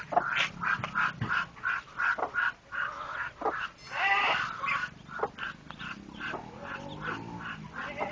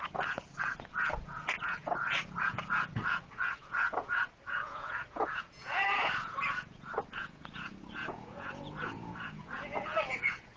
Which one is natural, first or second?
first